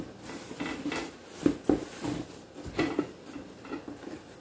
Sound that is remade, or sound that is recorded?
recorded